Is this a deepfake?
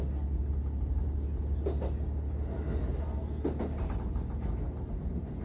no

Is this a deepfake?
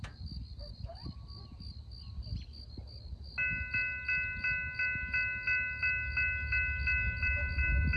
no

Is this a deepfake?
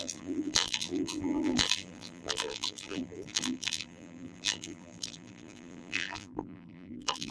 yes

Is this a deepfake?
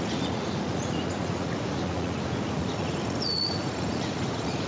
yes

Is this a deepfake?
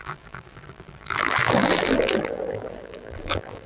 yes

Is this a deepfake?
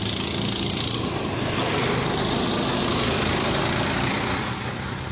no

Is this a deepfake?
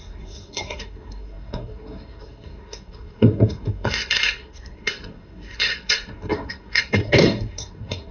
yes